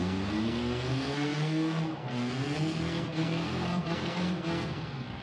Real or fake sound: fake